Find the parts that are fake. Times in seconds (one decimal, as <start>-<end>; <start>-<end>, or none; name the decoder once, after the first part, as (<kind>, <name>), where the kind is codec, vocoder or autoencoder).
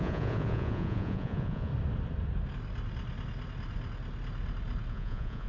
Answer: 0.0-1.7 (vocoder, Vocos); 4.9-5.5